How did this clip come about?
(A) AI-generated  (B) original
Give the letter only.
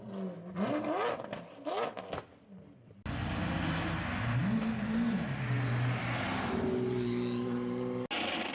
B